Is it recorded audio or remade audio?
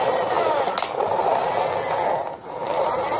recorded